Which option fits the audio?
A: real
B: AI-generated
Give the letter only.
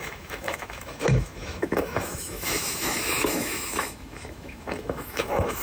B